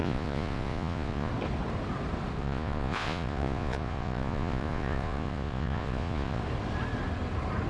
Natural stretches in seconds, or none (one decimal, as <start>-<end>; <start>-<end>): 1.3-2.4; 6.4-7.7